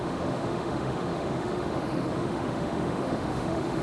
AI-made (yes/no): yes